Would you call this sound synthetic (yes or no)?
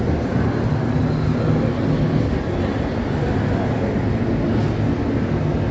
no